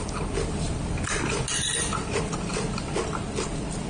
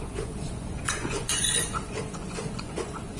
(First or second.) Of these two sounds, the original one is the first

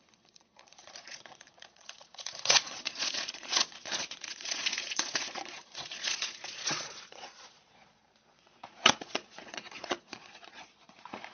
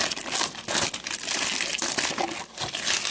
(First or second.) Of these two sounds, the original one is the second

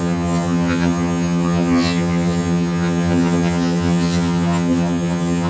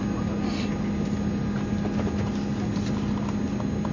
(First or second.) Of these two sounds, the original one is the second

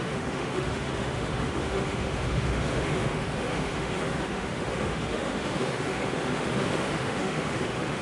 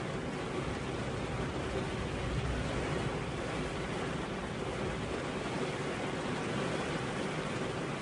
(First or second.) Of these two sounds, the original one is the second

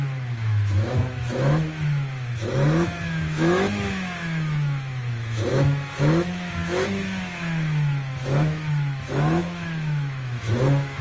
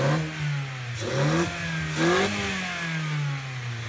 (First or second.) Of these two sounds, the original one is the second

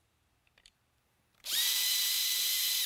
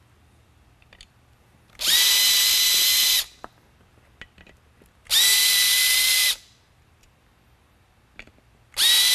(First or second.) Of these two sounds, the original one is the second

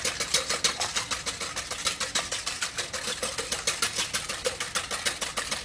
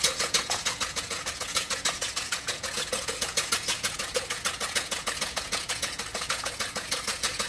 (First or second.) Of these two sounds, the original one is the first